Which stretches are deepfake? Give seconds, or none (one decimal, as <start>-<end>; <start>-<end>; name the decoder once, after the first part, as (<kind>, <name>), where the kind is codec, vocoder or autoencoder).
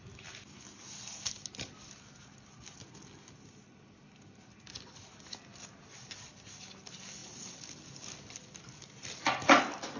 none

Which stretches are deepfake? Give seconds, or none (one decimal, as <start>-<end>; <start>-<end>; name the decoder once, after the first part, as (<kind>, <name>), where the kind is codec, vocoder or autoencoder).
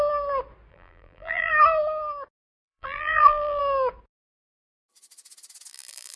0.7-1.5 (vocoder, BigVGAN v2); 2.6-3.6; 5.7-6.2